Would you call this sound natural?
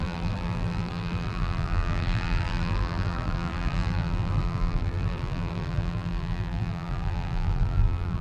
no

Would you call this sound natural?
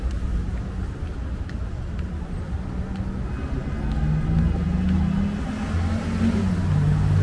yes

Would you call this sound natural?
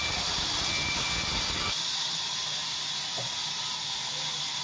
yes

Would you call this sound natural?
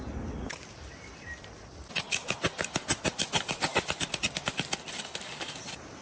yes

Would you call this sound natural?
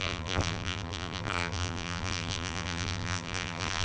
no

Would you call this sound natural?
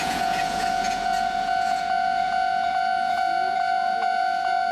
no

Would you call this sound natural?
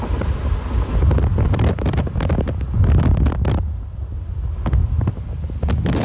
yes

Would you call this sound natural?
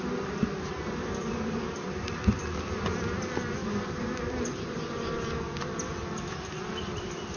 yes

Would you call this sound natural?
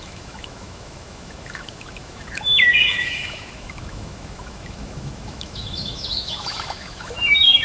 no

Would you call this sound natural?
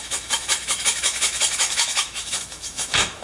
no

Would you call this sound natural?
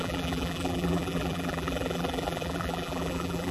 no